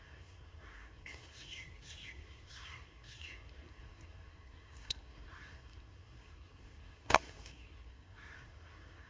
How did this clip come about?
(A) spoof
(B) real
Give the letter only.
A